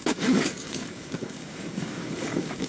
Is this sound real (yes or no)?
no